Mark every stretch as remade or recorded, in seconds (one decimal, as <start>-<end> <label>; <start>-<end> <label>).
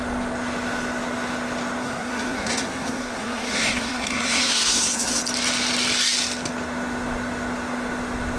0.0-1.8 recorded; 1.8-5.2 remade; 5.2-8.4 recorded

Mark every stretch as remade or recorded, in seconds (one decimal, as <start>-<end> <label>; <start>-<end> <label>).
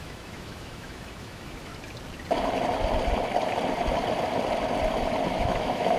0.0-1.7 remade; 1.7-5.3 recorded; 5.3-6.0 remade